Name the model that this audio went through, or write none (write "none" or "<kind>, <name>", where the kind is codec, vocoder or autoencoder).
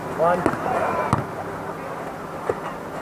none